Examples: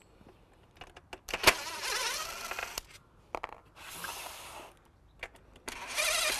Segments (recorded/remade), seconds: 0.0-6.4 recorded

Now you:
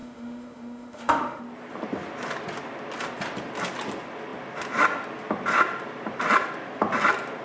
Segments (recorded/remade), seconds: 0.0-1.4 remade; 1.4-7.4 recorded

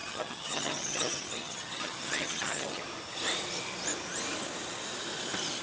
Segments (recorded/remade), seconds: 0.0-2.8 remade; 2.8-5.6 recorded

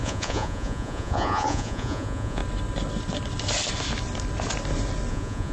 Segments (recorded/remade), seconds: 0.0-2.4 remade; 2.4-5.1 recorded; 5.1-5.5 remade

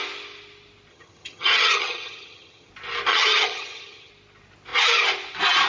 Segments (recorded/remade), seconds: 0.0-0.9 recorded; 0.9-2.7 remade; 2.7-3.1 recorded; 3.1-4.1 remade; 4.1-5.7 recorded